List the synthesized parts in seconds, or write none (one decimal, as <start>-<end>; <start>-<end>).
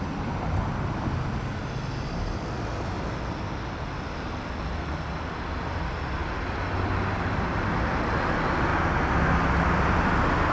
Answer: none